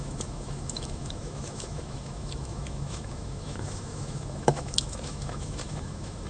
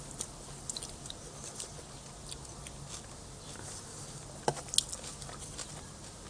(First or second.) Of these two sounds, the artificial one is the first